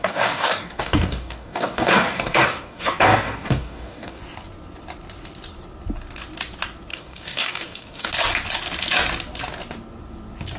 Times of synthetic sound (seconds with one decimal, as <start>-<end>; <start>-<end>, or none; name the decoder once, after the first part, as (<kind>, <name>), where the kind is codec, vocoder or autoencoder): 0.0-4.2 (codec, DAC); 6.9-8.1